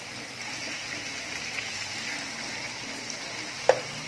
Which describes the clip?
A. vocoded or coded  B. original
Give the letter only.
B